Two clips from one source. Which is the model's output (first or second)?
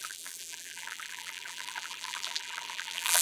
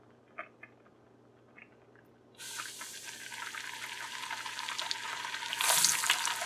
first